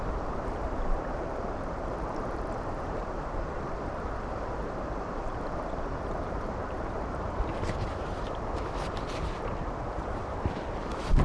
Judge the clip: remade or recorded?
remade